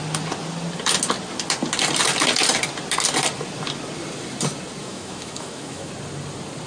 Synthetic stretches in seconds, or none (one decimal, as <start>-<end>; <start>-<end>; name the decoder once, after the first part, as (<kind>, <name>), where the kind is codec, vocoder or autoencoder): 4.8-5.9 (autoencoder, DAC-VAE)

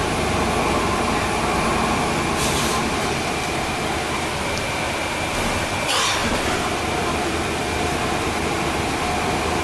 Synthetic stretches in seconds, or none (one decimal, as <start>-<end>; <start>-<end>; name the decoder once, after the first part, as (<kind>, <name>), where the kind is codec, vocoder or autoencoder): none

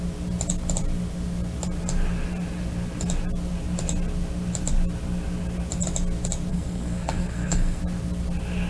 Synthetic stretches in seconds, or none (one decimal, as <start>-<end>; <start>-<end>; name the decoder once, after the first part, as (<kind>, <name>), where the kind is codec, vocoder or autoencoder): 6.5-7.8 (codec, SNAC)

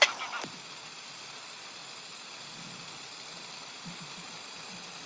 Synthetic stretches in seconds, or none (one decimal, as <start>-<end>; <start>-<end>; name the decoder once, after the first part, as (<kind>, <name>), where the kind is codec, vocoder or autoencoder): none

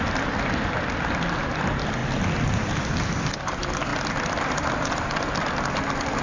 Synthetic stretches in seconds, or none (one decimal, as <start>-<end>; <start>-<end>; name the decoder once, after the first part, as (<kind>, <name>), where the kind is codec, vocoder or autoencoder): none